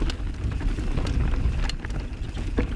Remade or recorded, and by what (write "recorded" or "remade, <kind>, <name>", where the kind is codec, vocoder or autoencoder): recorded